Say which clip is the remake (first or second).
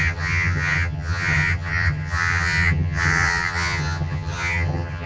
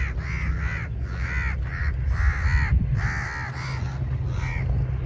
first